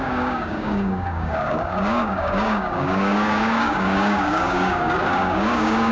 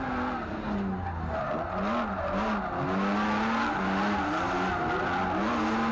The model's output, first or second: first